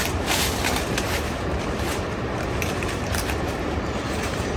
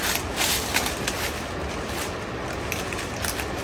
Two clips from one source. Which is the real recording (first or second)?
second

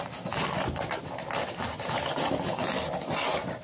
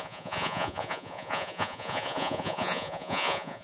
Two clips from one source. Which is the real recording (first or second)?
first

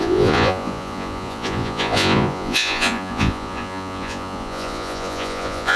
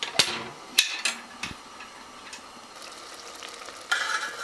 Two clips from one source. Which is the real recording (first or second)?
second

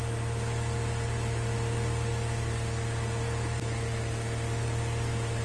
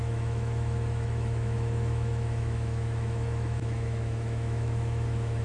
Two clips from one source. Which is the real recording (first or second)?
first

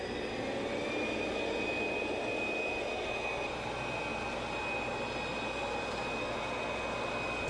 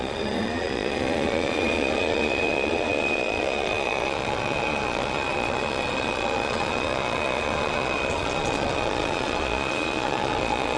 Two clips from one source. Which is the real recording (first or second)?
first